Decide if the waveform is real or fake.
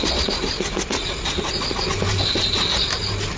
real